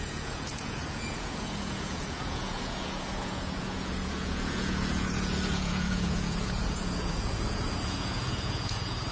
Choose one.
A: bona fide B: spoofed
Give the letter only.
B